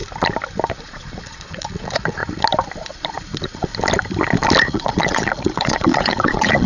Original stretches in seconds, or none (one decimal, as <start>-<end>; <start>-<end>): 0.0-0.8; 2.2-2.8; 3.7-4.6